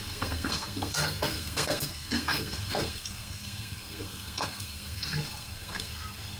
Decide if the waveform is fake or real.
fake